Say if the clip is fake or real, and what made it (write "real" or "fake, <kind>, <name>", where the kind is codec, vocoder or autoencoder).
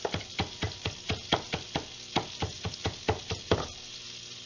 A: real